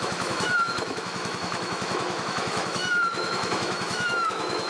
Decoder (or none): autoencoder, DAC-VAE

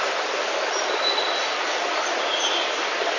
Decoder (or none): none